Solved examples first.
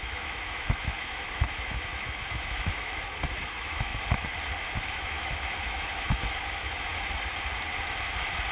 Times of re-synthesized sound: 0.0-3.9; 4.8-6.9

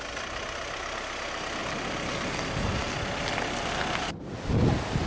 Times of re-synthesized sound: none

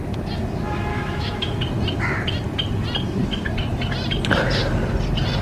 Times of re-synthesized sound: 0.9-1.6